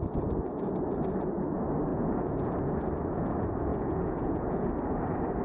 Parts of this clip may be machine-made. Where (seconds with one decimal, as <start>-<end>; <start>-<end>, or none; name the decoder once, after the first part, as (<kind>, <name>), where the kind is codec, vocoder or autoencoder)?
1.9-2.5 (vocoder, Vocos); 3.7-4.7